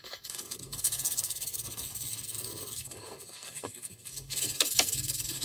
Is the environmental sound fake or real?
fake